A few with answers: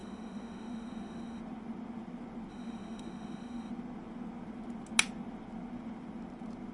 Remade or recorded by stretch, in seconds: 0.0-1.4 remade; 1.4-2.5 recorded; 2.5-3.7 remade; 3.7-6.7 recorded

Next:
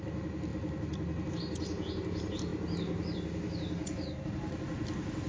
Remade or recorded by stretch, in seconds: 0.0-5.3 recorded

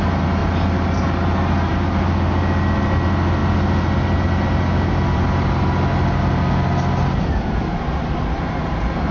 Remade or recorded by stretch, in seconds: 0.0-9.1 recorded

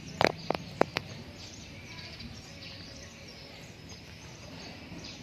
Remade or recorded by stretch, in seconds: 0.0-5.2 remade

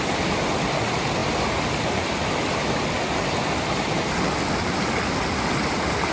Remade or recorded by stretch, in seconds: 0.0-6.1 recorded

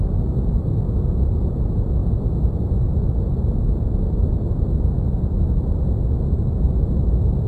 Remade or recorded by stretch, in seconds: 0.0-7.5 recorded

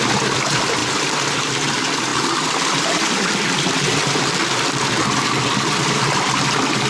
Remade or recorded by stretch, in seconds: 0.0-6.9 recorded

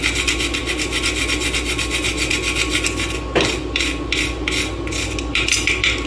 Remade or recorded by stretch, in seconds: 0.0-6.1 recorded